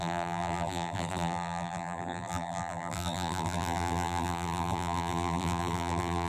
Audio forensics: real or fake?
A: fake